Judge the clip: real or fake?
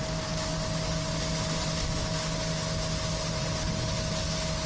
real